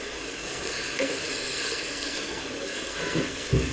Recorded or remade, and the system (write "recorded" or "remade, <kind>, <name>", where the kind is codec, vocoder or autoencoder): remade, codec, SNAC